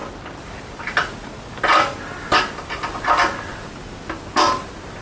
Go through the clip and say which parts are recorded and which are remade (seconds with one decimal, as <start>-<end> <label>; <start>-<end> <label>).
0.0-5.0 recorded